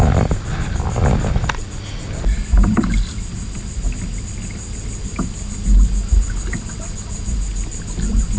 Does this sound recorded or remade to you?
recorded